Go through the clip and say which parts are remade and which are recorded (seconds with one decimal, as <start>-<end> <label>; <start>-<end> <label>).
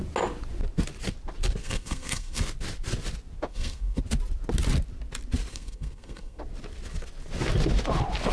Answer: 0.0-1.6 recorded; 1.6-2.4 remade; 2.4-3.5 recorded; 3.5-4.0 remade; 4.0-5.5 recorded; 5.5-6.4 remade; 6.4-8.3 recorded